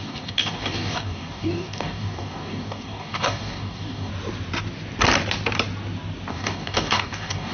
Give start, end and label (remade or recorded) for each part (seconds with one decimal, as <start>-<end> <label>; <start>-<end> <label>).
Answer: 0.0-4.1 remade; 4.1-6.3 recorded; 6.3-7.5 remade